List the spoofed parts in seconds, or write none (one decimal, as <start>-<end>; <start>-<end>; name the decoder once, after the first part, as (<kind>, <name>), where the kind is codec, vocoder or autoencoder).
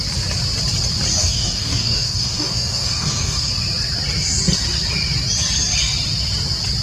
1.2-3.5 (codec, DAC)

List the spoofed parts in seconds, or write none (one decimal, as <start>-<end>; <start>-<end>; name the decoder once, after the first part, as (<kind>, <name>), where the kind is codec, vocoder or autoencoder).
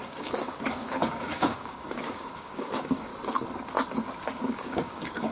0.0-3.1 (codec, DAC); 4.4-5.3